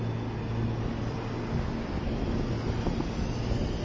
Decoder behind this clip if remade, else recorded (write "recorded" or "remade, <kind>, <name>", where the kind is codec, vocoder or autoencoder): recorded